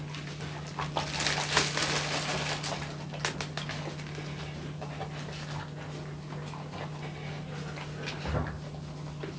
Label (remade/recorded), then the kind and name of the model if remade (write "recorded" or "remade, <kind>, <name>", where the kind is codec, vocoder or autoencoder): recorded